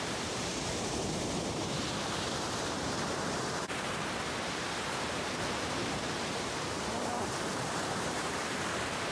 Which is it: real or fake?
fake